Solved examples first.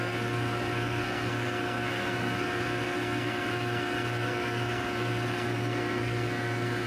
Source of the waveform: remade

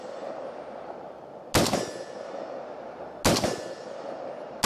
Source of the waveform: recorded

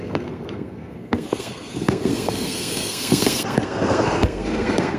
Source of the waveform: remade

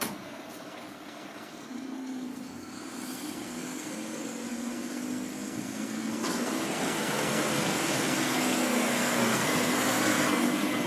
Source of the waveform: remade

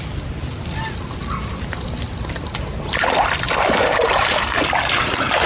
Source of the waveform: recorded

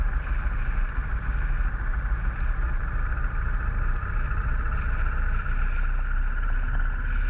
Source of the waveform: recorded